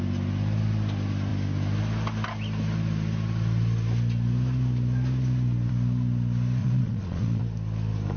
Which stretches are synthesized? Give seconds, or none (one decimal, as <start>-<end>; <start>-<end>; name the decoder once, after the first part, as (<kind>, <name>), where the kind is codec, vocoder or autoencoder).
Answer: 6.6-7.4 (vocoder, Vocos)